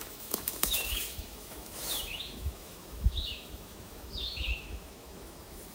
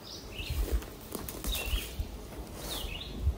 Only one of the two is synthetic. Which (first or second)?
first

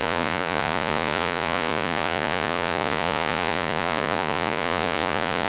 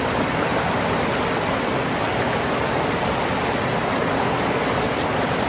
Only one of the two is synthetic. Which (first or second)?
first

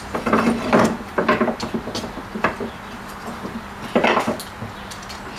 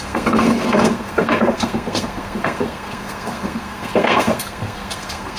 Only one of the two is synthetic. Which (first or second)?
second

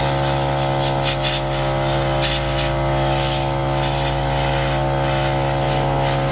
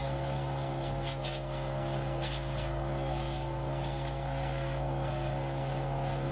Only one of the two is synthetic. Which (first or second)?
second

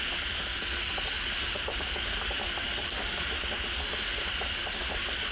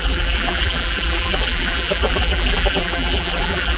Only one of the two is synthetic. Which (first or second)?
second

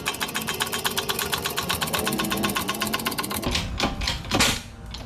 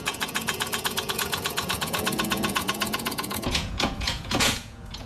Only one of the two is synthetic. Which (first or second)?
second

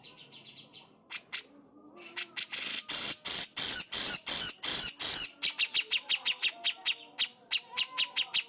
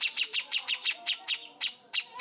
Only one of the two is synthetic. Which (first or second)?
second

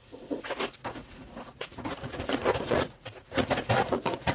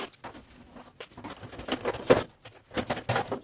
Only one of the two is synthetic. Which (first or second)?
first